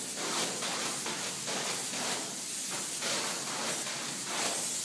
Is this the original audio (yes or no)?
yes